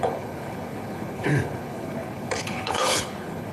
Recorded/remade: remade